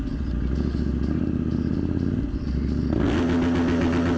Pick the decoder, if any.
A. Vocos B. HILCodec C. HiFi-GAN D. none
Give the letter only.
D